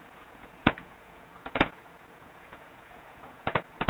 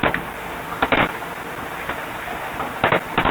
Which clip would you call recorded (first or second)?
second